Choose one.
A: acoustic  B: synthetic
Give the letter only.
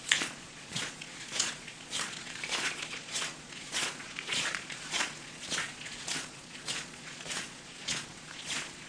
B